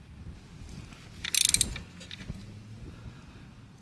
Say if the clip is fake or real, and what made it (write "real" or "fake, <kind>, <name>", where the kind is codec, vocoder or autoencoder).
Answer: real